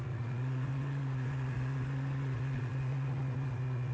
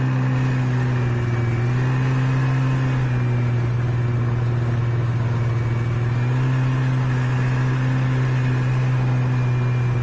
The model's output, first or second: first